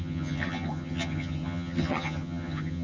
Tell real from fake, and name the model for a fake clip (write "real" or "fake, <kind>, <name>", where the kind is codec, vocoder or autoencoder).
fake, vocoder, HiFi-GAN